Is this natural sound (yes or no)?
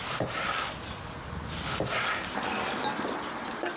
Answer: yes